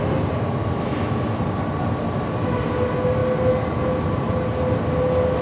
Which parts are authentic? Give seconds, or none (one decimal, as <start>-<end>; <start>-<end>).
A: 0.0-5.4

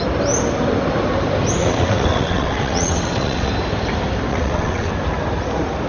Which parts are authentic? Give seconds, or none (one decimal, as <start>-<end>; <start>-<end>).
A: 0.0-1.6; 3.5-4.3; 4.9-5.9

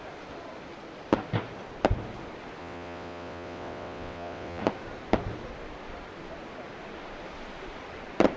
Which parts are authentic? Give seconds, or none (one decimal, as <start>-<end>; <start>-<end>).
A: 0.0-2.6; 4.6-8.4